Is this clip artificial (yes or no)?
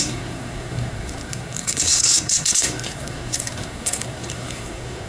yes